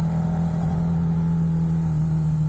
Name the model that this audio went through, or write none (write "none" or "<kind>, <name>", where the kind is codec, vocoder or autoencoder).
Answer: none